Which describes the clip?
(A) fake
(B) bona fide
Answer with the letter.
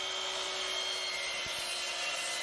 B